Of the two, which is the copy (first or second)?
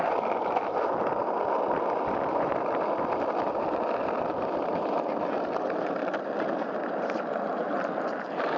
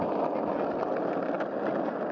first